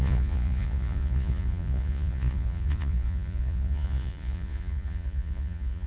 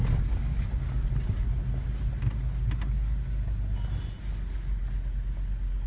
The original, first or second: second